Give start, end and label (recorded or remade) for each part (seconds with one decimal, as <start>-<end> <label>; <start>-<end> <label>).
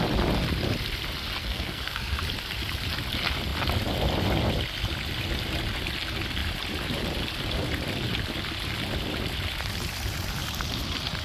0.0-1.4 recorded; 1.4-2.2 remade; 2.2-11.2 recorded